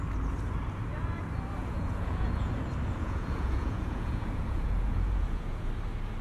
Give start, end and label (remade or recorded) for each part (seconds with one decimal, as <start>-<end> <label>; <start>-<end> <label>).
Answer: 0.0-1.6 recorded; 1.6-2.6 remade; 2.6-3.0 recorded; 3.0-5.7 remade; 5.7-6.2 recorded